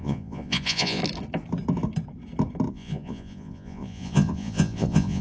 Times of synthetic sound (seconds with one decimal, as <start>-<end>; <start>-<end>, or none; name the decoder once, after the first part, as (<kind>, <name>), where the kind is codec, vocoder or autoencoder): 0.0-1.0 (vocoder, Vocos); 2.7-5.2